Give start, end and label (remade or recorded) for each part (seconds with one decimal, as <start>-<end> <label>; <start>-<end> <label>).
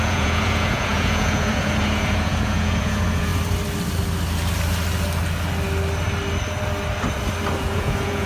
0.0-3.3 remade; 3.3-7.6 recorded; 7.6-8.3 remade